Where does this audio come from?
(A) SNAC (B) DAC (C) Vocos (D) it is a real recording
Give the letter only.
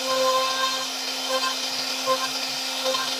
D